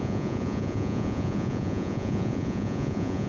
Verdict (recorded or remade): remade